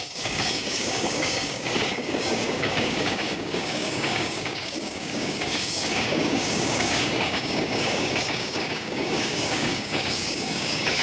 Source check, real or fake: fake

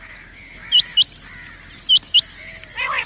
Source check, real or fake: real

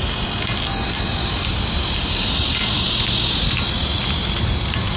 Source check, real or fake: real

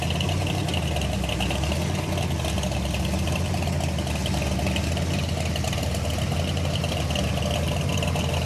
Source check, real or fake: real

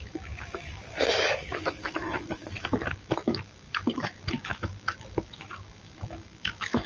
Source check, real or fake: fake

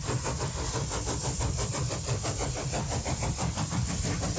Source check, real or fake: fake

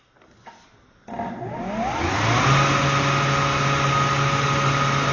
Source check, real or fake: real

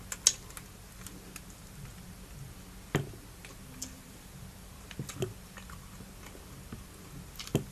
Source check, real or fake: real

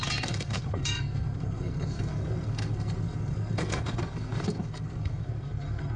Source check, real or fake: fake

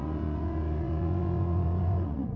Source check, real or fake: fake